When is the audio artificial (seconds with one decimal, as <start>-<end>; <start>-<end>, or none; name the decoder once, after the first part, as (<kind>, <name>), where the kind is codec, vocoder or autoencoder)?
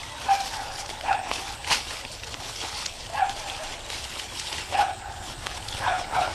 0.6-3.1 (codec, HILCodec); 3.9-6.3